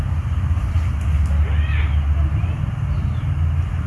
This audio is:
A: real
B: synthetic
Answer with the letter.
A